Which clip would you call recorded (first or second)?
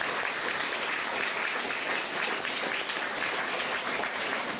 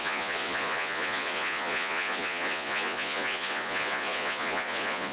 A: first